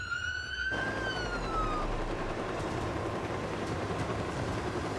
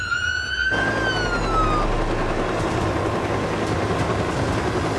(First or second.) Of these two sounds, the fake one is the first